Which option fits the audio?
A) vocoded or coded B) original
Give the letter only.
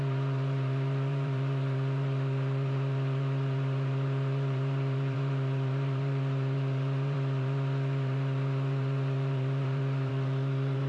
A